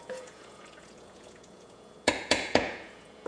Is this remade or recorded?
remade